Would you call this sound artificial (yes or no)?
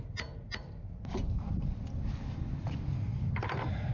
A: no